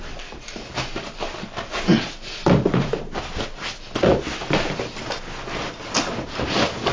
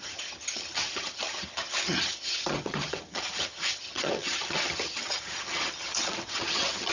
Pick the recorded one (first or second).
first